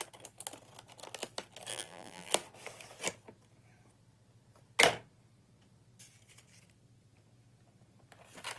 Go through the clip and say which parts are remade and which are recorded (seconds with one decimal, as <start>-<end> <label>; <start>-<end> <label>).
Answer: 0.0-1.7 recorded; 1.7-2.3 remade; 2.3-8.6 recorded